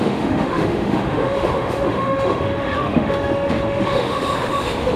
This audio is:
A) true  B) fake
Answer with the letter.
B